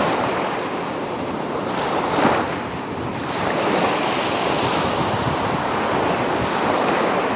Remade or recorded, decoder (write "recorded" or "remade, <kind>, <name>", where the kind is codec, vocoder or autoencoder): remade, vocoder, BigVGAN v2